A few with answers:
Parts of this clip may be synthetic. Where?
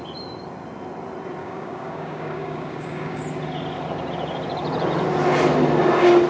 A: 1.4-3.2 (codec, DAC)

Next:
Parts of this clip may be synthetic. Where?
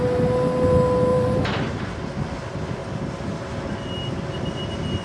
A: 1.1-1.8 (vocoder, BigVGAN v2); 2.8-3.5